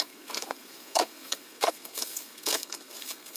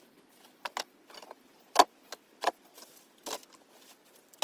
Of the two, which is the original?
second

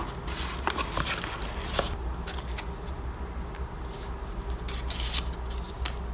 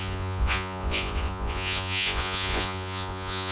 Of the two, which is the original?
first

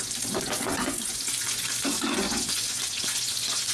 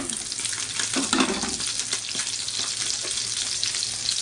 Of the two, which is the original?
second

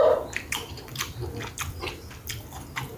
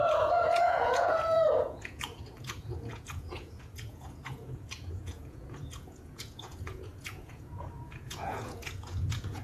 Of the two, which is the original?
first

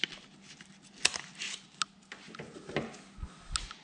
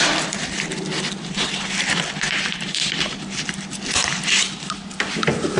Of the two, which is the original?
first